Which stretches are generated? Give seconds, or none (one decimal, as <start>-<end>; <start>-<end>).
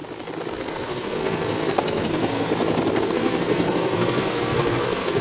0.5-2.5; 3.0-5.2